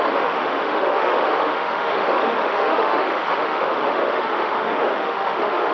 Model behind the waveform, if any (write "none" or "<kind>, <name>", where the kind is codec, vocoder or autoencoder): autoencoder, DAC-VAE